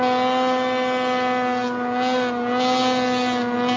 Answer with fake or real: real